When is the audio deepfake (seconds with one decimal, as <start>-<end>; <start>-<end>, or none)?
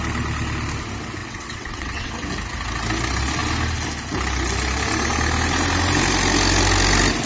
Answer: 1.2-2.1